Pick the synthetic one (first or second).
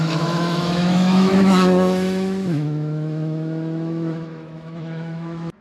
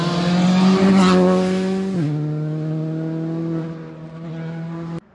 first